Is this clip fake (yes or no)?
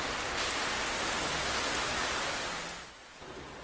no